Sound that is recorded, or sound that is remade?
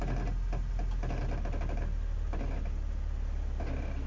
recorded